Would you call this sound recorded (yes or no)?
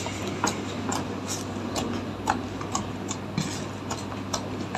yes